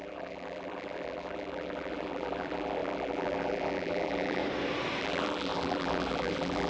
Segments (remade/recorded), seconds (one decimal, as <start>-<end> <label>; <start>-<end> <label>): 0.0-4.4 remade; 4.4-5.0 recorded; 5.0-6.7 remade